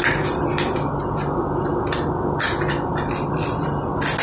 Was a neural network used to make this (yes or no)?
no